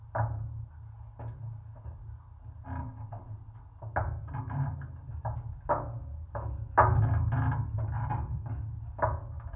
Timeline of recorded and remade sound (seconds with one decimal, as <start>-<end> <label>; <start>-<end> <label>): 0.0-2.8 recorded; 2.8-3.8 remade; 3.8-9.6 recorded